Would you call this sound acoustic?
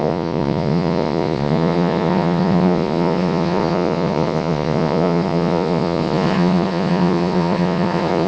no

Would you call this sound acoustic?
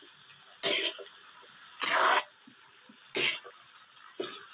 yes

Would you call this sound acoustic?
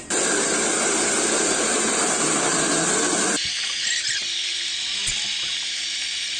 yes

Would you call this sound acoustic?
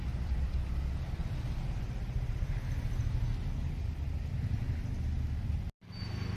yes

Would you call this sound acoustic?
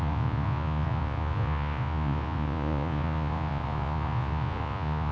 no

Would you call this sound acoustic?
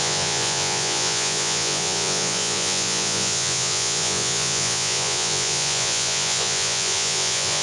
no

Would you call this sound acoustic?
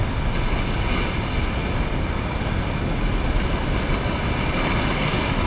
yes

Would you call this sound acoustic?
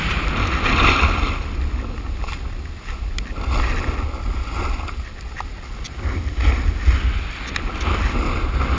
yes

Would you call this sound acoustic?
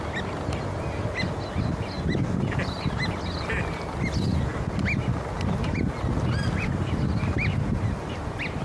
yes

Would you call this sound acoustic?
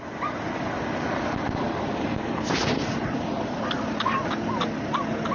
yes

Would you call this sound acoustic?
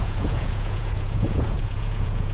no